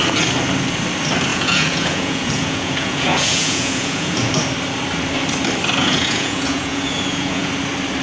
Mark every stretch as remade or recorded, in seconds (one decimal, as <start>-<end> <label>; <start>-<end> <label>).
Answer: 0.0-1.3 recorded; 1.3-4.3 remade; 4.3-5.8 recorded; 5.8-7.5 remade; 7.5-8.0 recorded